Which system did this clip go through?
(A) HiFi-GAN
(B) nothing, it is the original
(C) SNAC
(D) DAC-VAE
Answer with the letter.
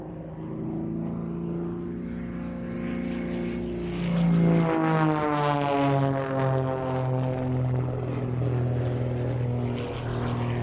B